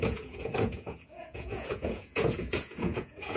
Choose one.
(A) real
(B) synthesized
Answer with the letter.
B